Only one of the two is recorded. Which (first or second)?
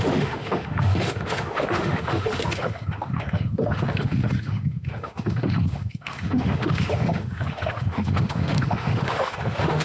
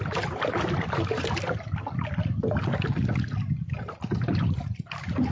second